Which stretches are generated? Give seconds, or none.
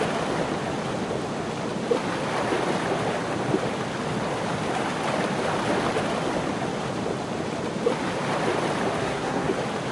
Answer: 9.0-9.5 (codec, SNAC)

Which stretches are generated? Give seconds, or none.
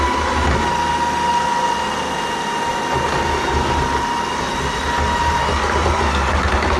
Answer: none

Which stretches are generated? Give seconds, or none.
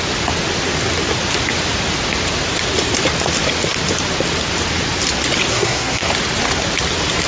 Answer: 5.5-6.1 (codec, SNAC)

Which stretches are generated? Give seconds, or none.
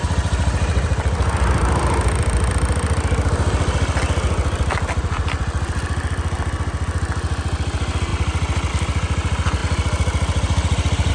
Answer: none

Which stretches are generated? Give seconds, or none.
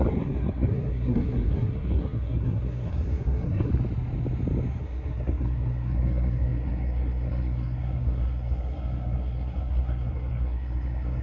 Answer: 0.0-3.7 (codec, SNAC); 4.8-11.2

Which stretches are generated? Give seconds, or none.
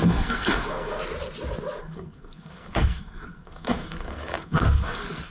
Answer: 0.0-1.0 (codec, SNAC); 1.8-5.3